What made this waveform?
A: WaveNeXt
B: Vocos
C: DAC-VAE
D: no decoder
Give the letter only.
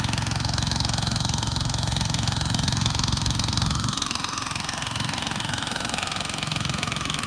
C